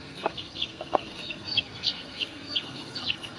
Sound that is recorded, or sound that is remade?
remade